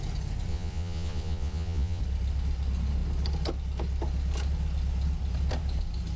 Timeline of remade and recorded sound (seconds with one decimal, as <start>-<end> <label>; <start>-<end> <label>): 0.0-0.5 recorded; 0.5-2.0 remade; 2.0-6.2 recorded